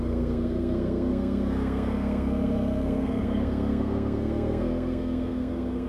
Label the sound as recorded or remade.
remade